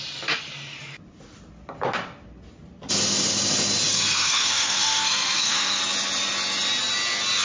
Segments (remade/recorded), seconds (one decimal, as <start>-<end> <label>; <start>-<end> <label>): 0.0-3.9 recorded; 3.9-5.8 remade; 5.8-7.4 recorded